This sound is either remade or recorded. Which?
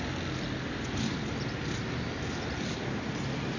recorded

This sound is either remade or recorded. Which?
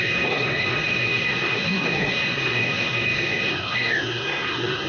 remade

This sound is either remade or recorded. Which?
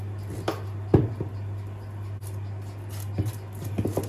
recorded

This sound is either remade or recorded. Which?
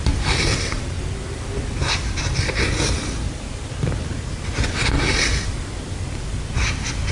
recorded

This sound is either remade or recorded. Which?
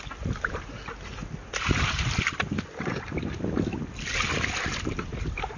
recorded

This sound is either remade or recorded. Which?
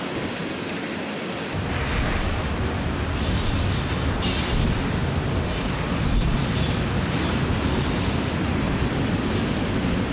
recorded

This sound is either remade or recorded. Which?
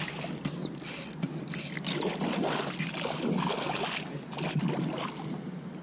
recorded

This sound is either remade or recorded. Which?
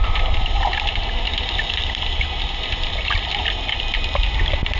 recorded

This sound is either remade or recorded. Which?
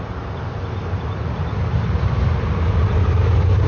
recorded